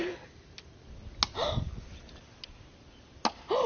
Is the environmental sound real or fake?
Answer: real